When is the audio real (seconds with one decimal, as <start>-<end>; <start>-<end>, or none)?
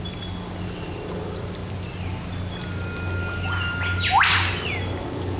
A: 0.0-5.4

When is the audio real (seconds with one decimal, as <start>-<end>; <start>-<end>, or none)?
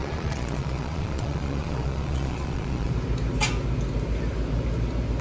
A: 2.9-5.2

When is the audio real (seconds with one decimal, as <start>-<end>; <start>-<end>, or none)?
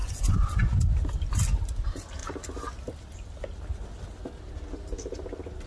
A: 0.8-5.7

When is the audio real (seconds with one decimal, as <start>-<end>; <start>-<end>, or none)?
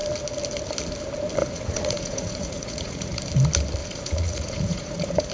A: 0.0-1.4; 3.2-3.8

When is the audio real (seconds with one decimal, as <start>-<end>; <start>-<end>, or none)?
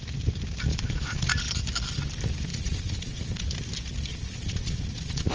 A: 0.0-0.7; 1.3-2.5; 3.5-4.1